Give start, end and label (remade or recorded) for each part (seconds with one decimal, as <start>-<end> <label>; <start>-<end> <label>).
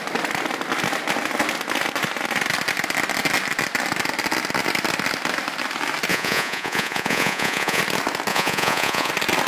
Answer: 0.0-6.1 recorded; 6.1-7.8 remade; 7.8-8.3 recorded; 8.3-9.1 remade; 9.1-9.5 recorded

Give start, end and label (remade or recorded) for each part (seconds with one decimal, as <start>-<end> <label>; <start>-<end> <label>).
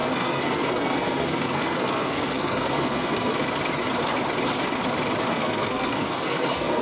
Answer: 0.0-3.3 remade; 3.3-5.3 recorded; 5.3-6.8 remade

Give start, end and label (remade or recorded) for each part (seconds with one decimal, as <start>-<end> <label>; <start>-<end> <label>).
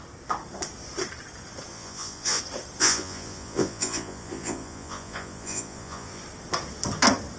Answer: 0.0-1.7 recorded; 1.7-2.4 remade; 2.4-2.8 recorded; 2.8-6.2 remade; 6.2-7.4 recorded